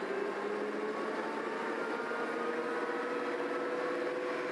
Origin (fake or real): real